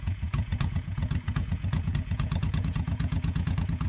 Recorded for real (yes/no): no